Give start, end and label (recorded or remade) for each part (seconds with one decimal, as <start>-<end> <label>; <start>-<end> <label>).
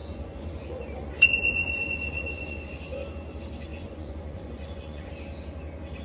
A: 0.0-2.6 remade; 2.6-3.7 recorded; 3.7-5.1 remade; 5.1-6.0 recorded